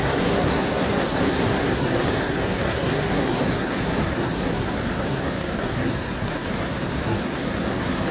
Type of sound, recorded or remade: remade